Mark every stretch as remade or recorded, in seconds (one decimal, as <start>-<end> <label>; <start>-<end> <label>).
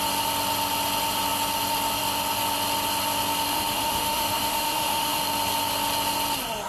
0.0-3.5 recorded; 3.5-5.2 remade; 5.2-6.7 recorded